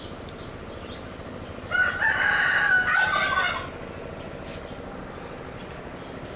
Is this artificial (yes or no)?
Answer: no